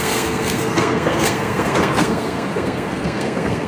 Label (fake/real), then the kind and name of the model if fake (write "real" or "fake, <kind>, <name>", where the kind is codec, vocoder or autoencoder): fake, codec, SNAC